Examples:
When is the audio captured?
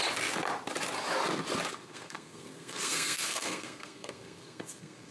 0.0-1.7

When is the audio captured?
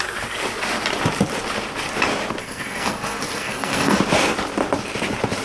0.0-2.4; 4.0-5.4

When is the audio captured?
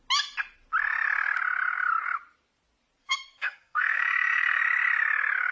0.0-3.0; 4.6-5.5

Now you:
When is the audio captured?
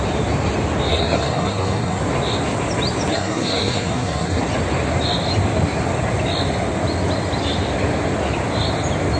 0.0-0.9; 2.0-3.1; 4.4-9.2